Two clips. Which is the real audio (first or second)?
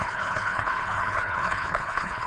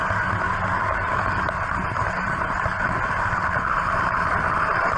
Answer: second